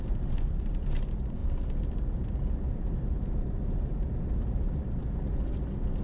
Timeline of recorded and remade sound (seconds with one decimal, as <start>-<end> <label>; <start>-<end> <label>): 0.0-6.0 recorded